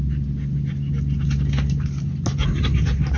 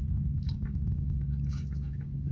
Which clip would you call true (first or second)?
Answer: first